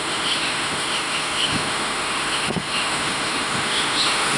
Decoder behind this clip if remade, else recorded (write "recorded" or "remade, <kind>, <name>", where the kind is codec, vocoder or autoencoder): remade, autoencoder, DAC-VAE